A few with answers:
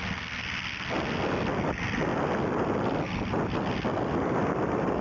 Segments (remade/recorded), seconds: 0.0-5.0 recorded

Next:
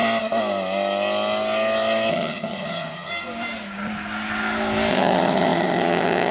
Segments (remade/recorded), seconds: 0.0-2.1 recorded; 2.1-3.1 remade; 3.1-4.9 recorded; 4.9-6.3 remade

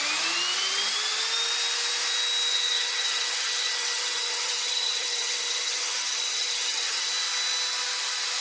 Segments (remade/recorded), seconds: 0.0-2.5 recorded; 2.5-7.1 remade; 7.1-8.4 recorded

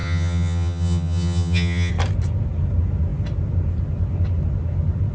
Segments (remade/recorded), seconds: 0.0-1.9 remade; 1.9-5.1 recorded

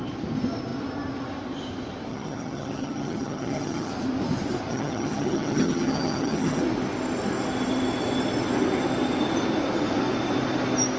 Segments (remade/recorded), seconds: 0.0-2.1 recorded; 2.1-3.9 remade; 3.9-4.7 recorded; 4.7-6.6 remade; 6.6-11.0 recorded

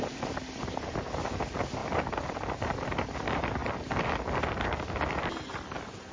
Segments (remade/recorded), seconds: 0.0-6.1 recorded

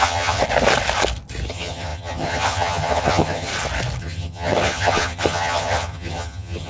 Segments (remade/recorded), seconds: 0.0-0.4 remade; 0.4-1.5 recorded; 1.5-3.5 remade; 3.5-4.0 recorded; 4.0-6.7 remade